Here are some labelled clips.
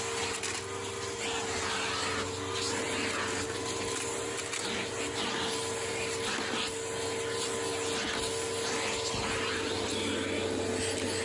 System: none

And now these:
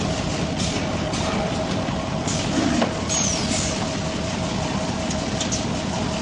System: none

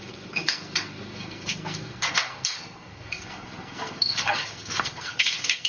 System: codec, SNAC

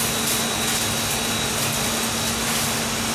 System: none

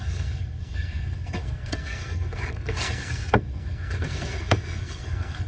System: codec, SNAC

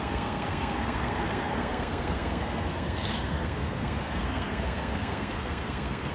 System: codec, SNAC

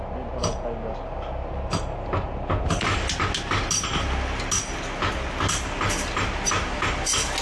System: none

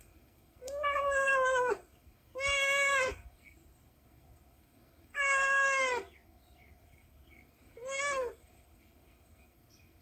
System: codec, SNAC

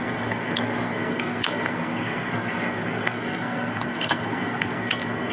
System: codec, SNAC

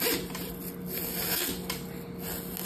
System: none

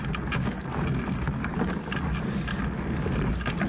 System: none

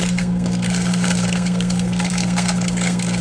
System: codec, SNAC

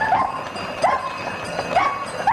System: none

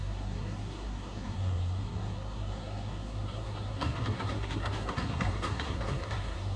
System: codec, SNAC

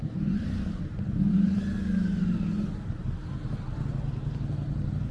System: none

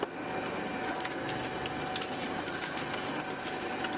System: none